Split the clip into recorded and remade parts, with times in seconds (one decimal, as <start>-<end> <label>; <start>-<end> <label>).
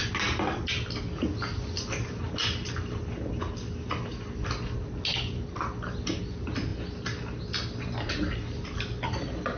0.0-9.6 recorded